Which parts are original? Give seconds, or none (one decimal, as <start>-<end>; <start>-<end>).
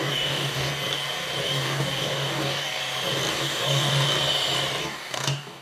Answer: 0.7-1.4; 2.8-3.3; 3.9-4.8